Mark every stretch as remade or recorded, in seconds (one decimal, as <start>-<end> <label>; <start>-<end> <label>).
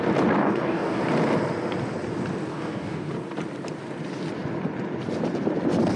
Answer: 0.0-0.4 recorded; 0.4-1.0 remade; 1.0-2.5 recorded; 2.5-3.1 remade; 3.1-6.0 recorded